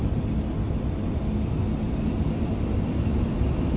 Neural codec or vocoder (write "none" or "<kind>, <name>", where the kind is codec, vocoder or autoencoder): none